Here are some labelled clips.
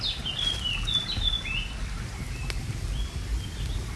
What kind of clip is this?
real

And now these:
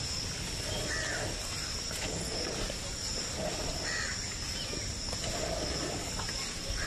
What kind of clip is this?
real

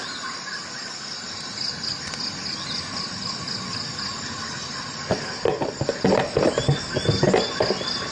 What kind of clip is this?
real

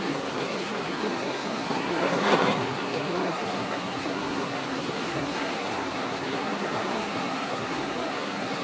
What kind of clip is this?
fake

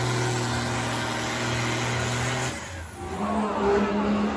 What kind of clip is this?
real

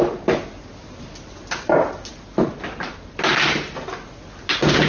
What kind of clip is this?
real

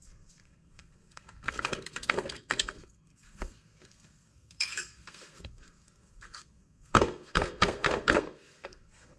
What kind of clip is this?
fake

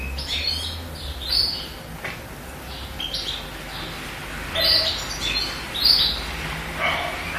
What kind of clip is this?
real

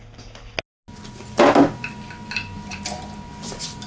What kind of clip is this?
real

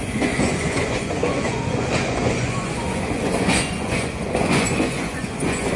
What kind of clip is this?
fake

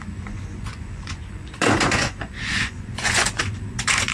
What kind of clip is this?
fake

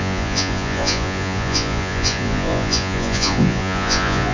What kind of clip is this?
fake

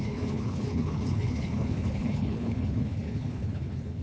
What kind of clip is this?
fake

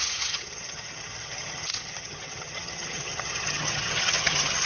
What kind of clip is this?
fake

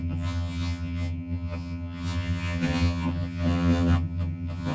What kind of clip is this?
fake